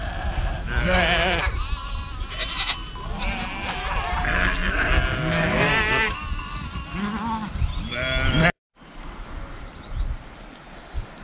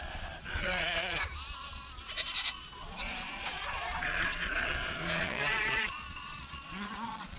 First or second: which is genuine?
first